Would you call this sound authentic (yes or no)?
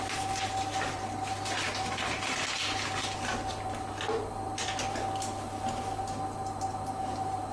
yes